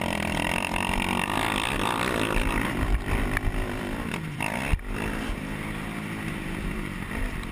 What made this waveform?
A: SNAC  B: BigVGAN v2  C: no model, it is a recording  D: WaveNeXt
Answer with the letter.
B